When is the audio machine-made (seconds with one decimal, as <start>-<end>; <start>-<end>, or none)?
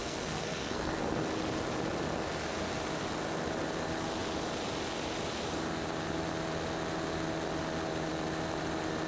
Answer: 0.0-1.2